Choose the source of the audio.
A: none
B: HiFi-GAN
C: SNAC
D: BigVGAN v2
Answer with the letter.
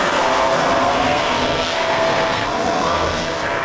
C